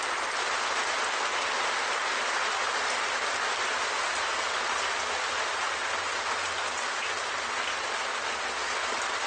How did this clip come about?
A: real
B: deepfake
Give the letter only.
A